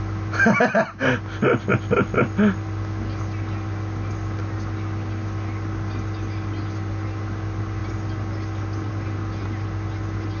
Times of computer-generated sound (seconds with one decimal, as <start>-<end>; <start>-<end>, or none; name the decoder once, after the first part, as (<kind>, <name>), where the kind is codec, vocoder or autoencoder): none